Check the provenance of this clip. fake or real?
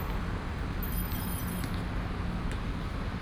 real